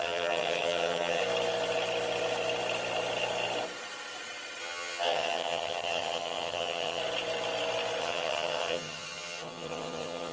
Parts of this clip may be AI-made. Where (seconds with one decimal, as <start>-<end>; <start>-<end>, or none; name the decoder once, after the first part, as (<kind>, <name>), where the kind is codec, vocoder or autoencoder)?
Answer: 0.0-1.2 (vocoder, HiFi-GAN); 4.6-7.0; 8.0-10.3